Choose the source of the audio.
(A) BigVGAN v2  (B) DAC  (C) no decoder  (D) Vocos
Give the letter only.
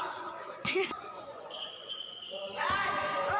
D